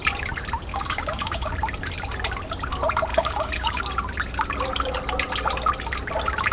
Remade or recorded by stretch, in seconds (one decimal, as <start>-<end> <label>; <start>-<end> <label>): 0.0-0.7 recorded; 0.7-1.5 remade; 1.5-3.1 recorded; 3.1-3.8 remade; 3.8-6.5 recorded

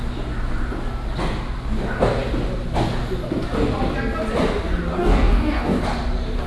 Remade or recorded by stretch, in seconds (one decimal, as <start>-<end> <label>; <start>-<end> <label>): 0.0-4.9 recorded; 4.9-5.8 remade; 5.8-6.5 recorded

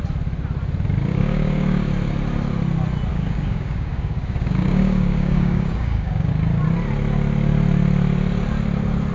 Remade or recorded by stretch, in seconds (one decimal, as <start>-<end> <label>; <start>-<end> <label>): 0.0-1.1 recorded; 1.1-1.9 remade; 1.9-3.1 recorded; 3.1-6.3 remade; 6.3-9.1 recorded

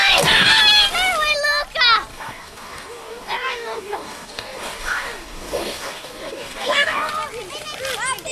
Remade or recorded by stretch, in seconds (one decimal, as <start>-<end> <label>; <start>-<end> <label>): 0.0-0.6 remade; 0.6-2.1 recorded; 2.1-7.1 remade; 7.1-8.3 recorded

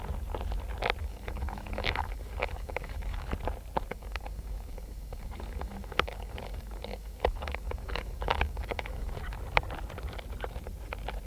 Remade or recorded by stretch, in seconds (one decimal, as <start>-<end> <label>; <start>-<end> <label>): 0.0-1.0 recorded; 1.0-3.3 remade; 3.3-3.9 recorded; 3.9-9.1 remade; 9.1-11.3 recorded

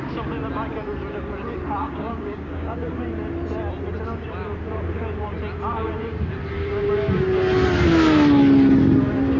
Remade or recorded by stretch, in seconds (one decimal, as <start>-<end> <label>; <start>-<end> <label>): 0.0-1.8 recorded; 1.8-2.9 remade; 2.9-9.4 recorded